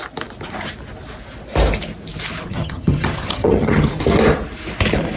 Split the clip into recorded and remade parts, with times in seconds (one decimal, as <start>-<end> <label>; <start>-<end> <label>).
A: 0.0-2.5 recorded; 2.5-3.9 remade; 3.9-5.2 recorded